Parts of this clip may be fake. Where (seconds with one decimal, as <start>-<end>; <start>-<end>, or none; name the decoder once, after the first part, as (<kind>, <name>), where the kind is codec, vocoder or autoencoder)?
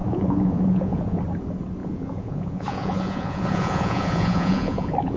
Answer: 0.0-1.2 (vocoder, Vocos); 1.8-5.2